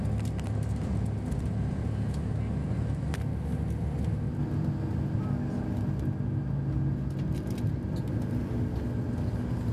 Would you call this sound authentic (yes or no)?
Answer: yes